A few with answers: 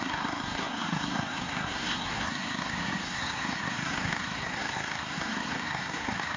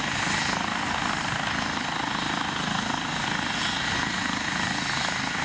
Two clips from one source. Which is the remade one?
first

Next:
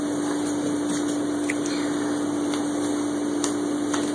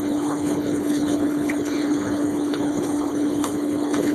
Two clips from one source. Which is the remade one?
second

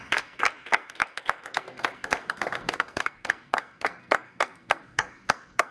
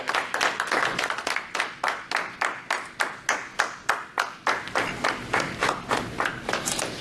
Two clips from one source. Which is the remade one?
first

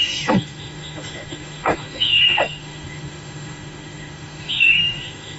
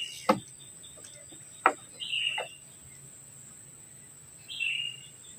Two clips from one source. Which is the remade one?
first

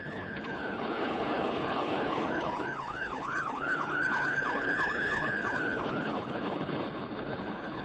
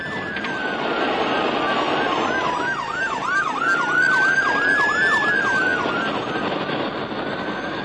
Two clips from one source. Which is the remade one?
first